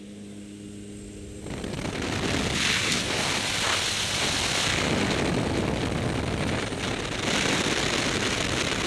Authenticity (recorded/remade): recorded